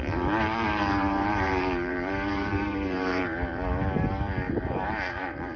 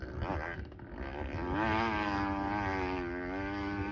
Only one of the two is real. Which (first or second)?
second